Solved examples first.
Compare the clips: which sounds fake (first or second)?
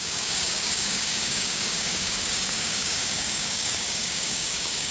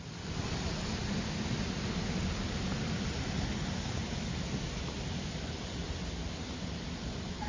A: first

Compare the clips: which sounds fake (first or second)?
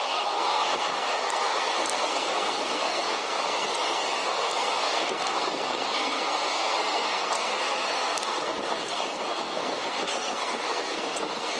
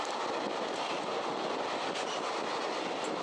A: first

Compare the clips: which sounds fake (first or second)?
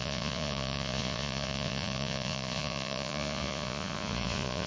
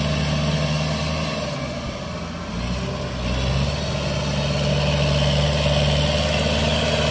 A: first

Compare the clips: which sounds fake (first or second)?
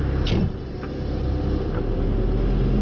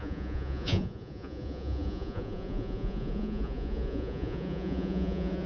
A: second